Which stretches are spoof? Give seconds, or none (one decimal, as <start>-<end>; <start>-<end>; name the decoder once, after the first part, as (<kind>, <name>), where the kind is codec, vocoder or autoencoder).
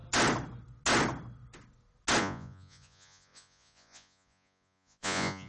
2.2-5.5 (vocoder, Vocos)